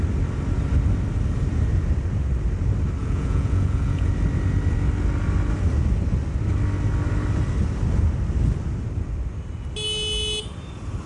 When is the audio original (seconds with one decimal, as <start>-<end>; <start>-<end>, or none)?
0.0-3.0; 4.1-11.1